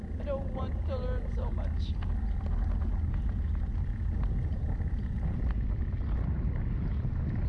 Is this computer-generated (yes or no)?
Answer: no